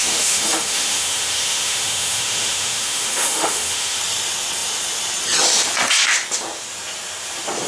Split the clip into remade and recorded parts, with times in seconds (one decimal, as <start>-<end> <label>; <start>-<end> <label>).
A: 0.0-4.0 remade; 4.0-7.7 recorded